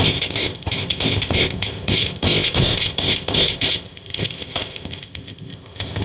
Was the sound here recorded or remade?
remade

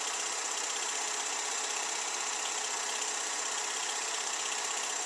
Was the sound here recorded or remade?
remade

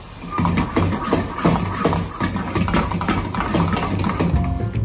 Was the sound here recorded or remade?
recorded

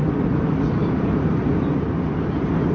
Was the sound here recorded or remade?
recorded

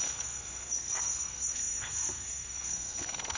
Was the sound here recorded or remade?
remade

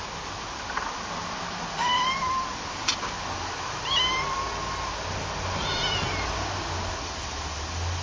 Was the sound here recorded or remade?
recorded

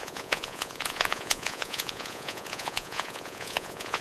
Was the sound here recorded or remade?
remade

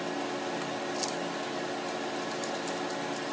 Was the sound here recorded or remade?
recorded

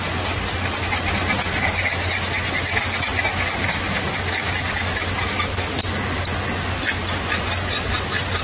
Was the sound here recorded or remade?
recorded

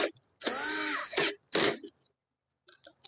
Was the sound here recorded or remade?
recorded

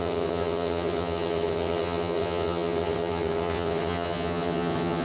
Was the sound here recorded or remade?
remade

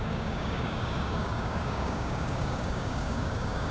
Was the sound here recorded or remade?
remade